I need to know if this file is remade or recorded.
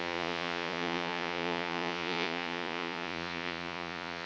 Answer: remade